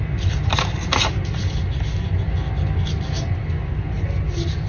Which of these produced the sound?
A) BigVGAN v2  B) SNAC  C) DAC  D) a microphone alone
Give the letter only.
D